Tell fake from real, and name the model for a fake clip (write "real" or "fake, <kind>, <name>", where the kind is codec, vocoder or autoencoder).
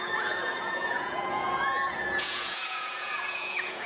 fake, vocoder, Vocos